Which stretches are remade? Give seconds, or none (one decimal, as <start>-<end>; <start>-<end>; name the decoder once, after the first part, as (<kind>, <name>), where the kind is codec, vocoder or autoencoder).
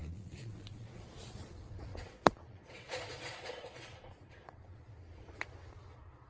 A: 0.0-6.3 (vocoder, Vocos)